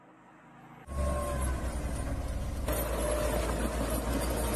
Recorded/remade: recorded